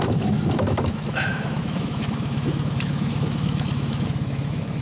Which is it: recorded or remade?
remade